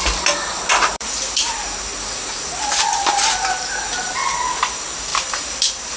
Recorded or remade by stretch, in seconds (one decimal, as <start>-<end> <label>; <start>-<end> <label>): 0.0-0.5 recorded; 0.5-4.1 remade; 4.1-5.1 recorded; 5.1-6.0 remade